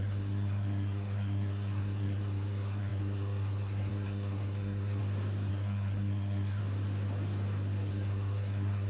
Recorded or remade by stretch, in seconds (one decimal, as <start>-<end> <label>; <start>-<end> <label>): 0.0-5.0 remade; 5.0-5.5 recorded; 5.5-6.6 remade; 6.6-7.9 recorded; 7.9-8.9 remade

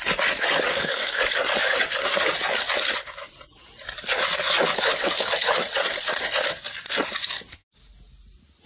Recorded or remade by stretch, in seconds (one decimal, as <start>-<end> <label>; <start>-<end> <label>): 0.0-0.7 recorded; 0.7-1.2 remade; 1.2-8.7 recorded

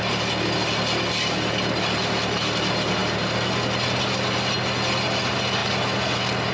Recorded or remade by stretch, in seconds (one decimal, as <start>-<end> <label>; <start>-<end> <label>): 0.0-6.5 recorded

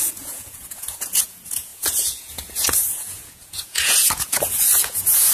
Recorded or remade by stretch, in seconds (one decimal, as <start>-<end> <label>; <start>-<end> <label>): 0.0-5.3 remade

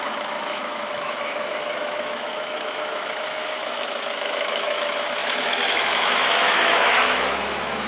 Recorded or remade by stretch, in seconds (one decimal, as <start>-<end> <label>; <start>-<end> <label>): 0.0-7.9 remade

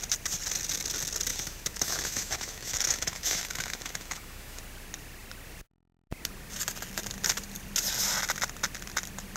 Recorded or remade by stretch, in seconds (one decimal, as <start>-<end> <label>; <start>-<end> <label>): 0.0-1.3 recorded; 1.3-4.6 remade; 4.6-9.4 recorded

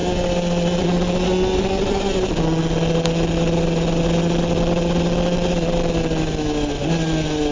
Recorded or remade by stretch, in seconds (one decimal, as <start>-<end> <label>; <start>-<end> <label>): 0.0-7.5 recorded

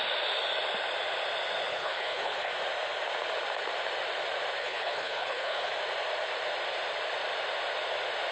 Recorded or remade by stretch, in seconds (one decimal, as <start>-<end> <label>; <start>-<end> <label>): 0.0-1.7 recorded; 1.7-2.5 remade; 2.5-4.6 recorded; 4.6-5.7 remade; 5.7-8.3 recorded